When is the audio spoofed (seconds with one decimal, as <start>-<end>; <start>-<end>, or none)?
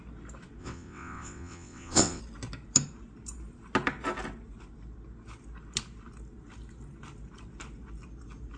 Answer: 0.6-2.2